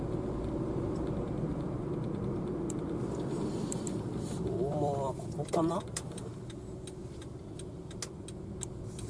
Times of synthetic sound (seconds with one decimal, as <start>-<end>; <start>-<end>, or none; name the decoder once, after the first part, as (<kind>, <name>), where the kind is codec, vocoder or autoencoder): 1.5-6.2 (vocoder, BigVGAN v2); 7.0-7.7